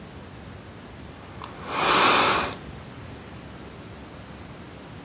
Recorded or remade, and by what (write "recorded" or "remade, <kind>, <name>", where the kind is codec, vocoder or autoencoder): recorded